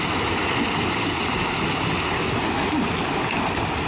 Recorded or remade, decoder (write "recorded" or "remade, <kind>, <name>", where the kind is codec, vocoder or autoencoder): recorded